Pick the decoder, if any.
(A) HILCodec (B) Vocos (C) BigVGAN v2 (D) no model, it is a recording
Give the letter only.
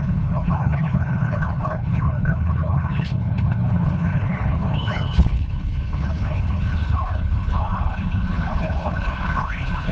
A